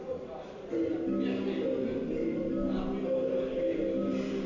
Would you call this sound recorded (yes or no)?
yes